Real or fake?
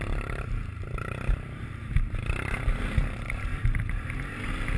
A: fake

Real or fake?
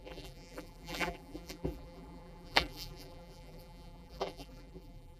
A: fake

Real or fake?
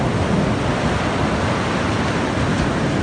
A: real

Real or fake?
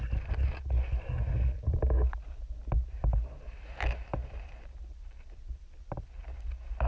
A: real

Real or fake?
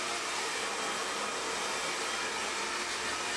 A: real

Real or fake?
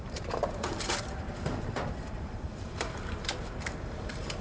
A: fake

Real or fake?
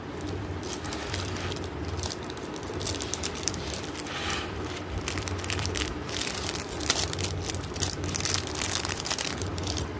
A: fake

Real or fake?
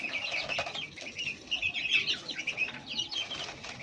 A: real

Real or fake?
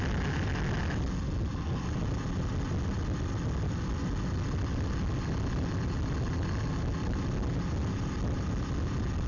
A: real